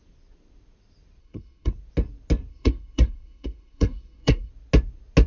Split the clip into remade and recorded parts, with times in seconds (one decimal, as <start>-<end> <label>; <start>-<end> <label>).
0.0-1.2 recorded; 1.2-1.7 remade; 1.7-2.5 recorded; 2.5-4.5 remade; 4.5-5.3 recorded